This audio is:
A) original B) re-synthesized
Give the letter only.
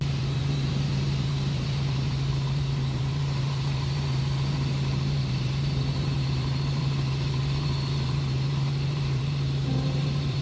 B